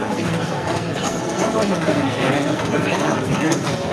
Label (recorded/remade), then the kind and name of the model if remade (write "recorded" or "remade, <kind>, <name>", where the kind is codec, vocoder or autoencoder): remade, codec, SNAC